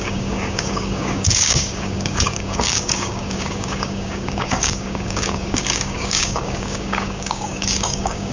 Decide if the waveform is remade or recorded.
remade